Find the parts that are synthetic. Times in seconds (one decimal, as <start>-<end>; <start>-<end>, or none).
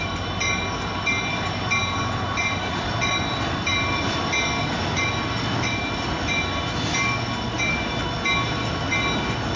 none